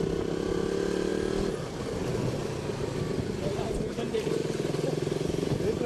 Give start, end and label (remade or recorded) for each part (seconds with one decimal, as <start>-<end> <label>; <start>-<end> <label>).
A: 0.0-5.9 recorded